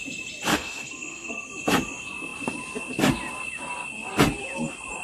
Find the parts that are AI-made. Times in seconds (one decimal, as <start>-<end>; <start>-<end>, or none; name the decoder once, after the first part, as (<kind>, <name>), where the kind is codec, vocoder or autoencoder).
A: 0.5-1.5 (codec, SNAC)